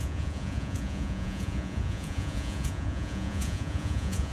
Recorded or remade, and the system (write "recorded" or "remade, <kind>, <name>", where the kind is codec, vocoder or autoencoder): remade, vocoder, Vocos